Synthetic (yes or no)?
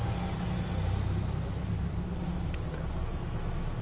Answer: no